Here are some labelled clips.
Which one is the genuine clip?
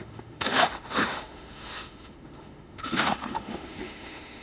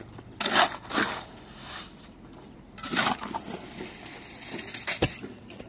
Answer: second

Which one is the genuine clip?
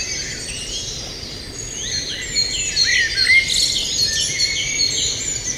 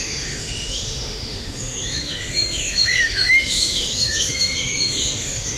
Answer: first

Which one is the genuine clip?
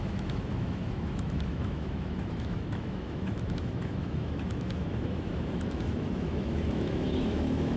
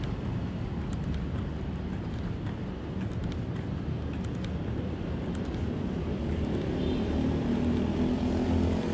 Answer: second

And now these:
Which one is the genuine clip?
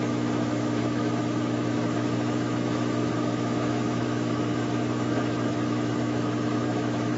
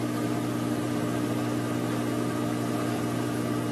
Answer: second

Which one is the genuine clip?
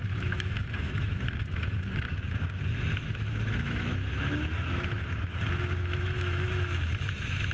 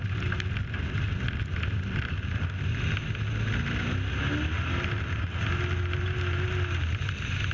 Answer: second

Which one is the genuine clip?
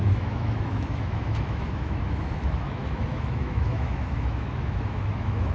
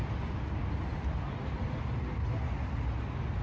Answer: second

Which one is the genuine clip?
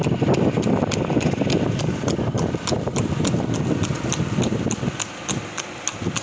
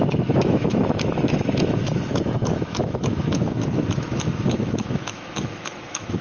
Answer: first